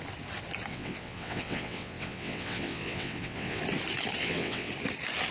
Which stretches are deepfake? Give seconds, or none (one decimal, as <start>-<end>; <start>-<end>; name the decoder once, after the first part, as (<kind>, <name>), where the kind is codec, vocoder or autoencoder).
0.7-3.6 (vocoder, WaveNeXt); 4.2-4.7